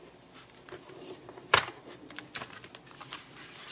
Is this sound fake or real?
real